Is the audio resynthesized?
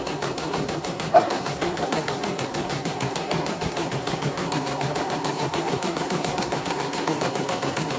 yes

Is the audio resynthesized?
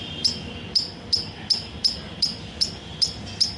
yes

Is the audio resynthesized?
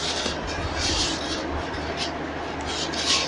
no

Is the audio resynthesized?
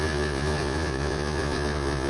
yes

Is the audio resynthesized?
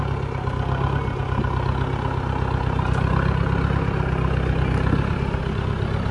no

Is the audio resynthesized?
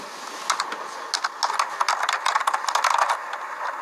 no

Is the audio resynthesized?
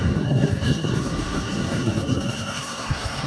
yes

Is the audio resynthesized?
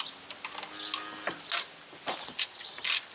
no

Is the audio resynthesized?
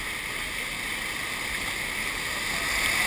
no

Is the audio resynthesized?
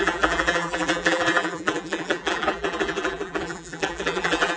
yes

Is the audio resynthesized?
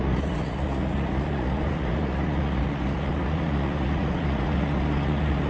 yes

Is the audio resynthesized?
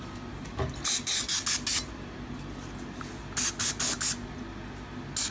no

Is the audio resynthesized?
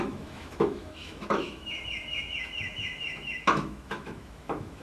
yes